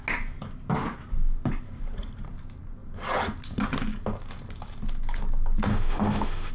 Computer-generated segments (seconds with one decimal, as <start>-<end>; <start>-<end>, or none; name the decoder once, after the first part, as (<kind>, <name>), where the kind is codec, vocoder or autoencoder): 5.7-6.5 (autoencoder, DAC-VAE)